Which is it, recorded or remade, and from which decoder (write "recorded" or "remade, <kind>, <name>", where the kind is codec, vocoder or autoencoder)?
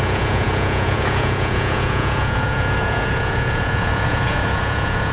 remade, vocoder, Vocos